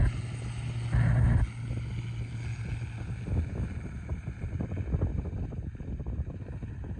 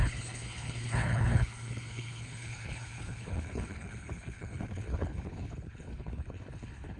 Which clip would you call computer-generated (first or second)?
second